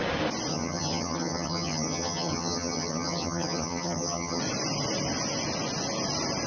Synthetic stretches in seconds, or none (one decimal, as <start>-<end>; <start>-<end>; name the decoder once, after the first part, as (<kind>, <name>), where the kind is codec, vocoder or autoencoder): 0.5-4.4 (vocoder, HiFi-GAN)